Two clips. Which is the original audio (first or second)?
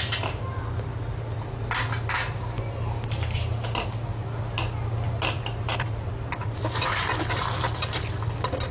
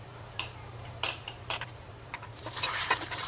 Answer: first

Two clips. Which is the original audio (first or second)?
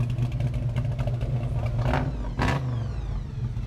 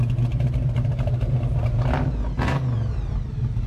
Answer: first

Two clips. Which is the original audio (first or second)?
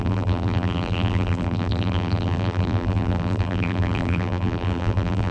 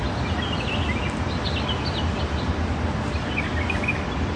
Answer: second